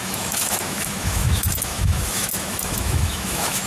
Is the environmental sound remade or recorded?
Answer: remade